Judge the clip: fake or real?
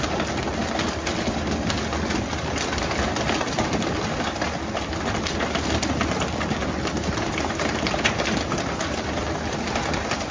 real